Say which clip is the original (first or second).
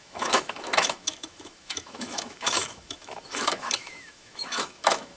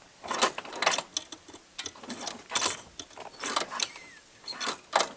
second